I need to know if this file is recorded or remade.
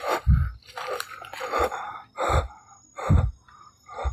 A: remade